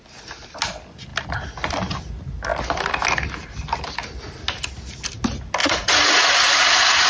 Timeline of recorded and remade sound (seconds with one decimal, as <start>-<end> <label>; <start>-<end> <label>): 0.0-5.6 recorded; 5.6-7.1 remade